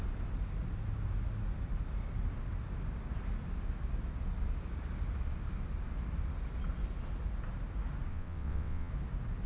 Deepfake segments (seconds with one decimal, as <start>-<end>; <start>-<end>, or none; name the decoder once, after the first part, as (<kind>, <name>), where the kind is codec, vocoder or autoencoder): 8.1-8.9 (vocoder, WaveNeXt)